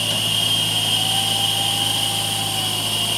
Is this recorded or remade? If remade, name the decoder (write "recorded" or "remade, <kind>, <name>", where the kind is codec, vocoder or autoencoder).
recorded